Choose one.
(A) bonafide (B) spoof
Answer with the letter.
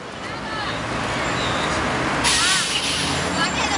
A